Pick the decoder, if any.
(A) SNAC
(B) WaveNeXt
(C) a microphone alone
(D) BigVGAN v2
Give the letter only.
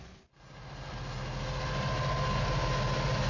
C